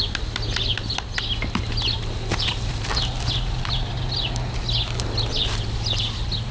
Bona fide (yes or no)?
yes